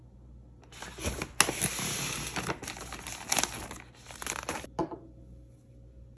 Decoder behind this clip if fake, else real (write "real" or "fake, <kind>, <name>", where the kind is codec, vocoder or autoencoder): real